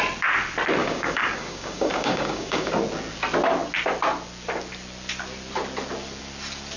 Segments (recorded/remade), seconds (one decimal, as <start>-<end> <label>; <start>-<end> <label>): 0.0-0.8 recorded; 0.8-2.7 remade; 2.7-6.8 recorded